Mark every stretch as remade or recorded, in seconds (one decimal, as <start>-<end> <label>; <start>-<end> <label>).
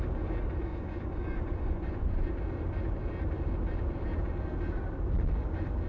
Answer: 0.0-0.7 recorded; 0.7-2.3 remade; 2.3-5.9 recorded